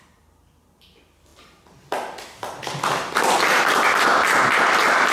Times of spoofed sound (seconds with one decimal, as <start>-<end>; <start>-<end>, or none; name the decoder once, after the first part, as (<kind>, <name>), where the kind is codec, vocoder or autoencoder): none